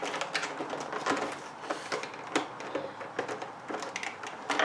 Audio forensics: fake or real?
real